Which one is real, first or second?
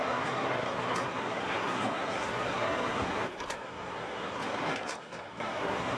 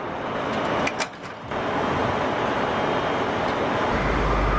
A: second